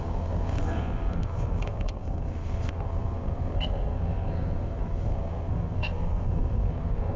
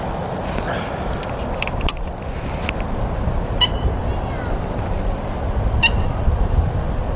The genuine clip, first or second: second